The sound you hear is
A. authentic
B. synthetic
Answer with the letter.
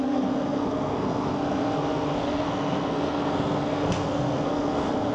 B